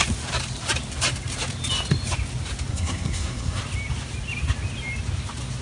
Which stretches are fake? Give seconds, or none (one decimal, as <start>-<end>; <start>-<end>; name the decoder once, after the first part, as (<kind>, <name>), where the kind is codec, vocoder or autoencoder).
2.7-3.6 (codec, SNAC)